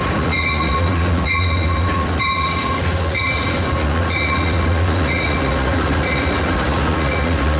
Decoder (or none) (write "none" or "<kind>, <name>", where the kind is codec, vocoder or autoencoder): vocoder, Vocos